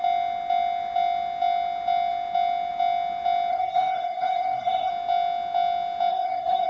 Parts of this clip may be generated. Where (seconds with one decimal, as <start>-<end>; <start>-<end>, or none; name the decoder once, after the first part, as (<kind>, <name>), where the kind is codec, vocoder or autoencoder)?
3.5-4.9 (codec, SNAC); 6.1-6.7